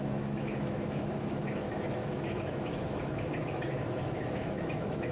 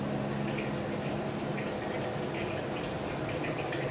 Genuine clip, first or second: second